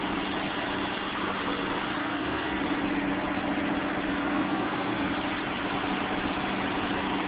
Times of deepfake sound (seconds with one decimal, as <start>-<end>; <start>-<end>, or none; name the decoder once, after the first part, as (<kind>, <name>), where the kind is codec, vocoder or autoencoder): 2.0-2.6 (codec, SNAC); 4.1-5.1